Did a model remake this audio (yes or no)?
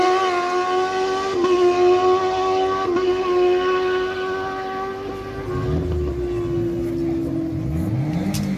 no